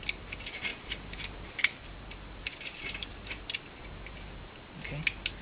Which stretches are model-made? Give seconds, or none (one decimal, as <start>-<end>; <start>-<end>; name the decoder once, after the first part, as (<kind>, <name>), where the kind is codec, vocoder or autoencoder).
none